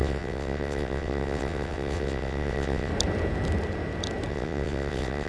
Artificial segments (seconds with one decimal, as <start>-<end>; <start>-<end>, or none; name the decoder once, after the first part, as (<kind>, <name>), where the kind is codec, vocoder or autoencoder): 0.0-2.9 (vocoder, WaveNeXt); 4.3-5.3